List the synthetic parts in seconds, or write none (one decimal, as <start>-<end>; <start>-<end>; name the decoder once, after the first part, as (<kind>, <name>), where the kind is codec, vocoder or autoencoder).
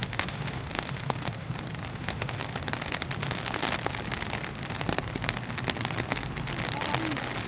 0.0-1.5 (autoencoder, DAC-VAE); 1.9-2.4; 3.2-3.7